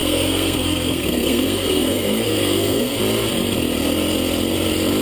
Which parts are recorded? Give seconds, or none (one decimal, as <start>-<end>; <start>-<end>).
3.0-5.0